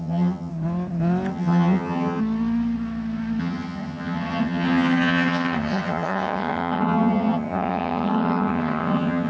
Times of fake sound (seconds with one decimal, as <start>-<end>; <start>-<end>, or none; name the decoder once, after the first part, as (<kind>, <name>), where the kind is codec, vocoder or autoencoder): 0.0-0.5 (vocoder, HiFi-GAN); 1.3-2.2; 3.4-9.3